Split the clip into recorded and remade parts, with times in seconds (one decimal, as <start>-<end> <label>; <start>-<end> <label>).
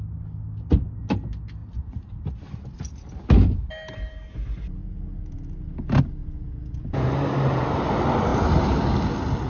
0.0-4.8 recorded; 4.8-5.3 remade; 5.3-6.2 recorded; 6.2-7.1 remade; 7.1-9.5 recorded